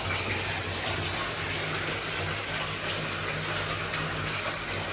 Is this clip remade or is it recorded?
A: recorded